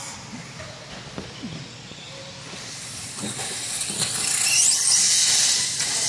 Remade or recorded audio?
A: recorded